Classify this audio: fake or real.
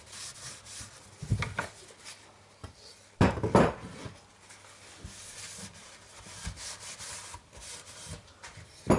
real